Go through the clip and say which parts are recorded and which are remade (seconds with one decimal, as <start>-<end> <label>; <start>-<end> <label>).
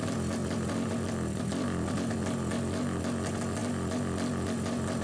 0.0-0.4 recorded; 0.4-3.0 remade; 3.0-3.6 recorded; 3.6-5.0 remade